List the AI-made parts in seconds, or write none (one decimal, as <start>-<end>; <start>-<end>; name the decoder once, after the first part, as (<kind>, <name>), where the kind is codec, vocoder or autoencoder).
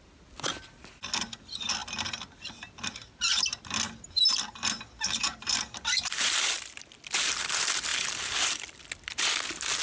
5.3-6.8 (vocoder, BigVGAN v2); 7.9-8.8